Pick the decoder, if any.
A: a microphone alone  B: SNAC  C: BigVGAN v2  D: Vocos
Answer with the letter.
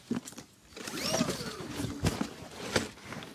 A